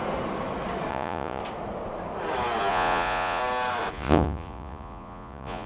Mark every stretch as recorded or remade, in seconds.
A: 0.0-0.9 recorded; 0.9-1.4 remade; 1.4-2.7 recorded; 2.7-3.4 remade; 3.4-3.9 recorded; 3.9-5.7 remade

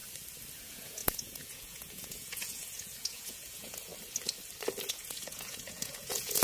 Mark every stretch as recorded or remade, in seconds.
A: 0.0-0.6 recorded; 0.6-3.9 remade; 3.9-4.9 recorded; 4.9-6.4 remade